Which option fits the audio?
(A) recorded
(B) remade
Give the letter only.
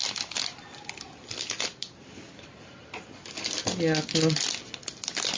A